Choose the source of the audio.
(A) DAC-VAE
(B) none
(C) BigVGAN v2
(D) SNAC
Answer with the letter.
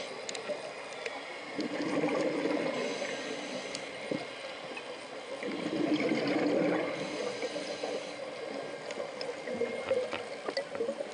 B